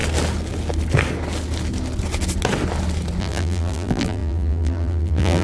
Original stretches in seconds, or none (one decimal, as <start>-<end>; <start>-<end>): 0.0-3.2